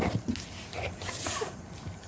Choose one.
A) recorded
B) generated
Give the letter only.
A